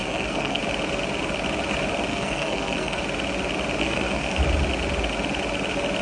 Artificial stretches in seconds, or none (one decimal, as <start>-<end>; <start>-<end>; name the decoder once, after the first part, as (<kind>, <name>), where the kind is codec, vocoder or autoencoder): 0.0-0.6 (codec, SNAC); 2.1-3.0; 3.8-4.4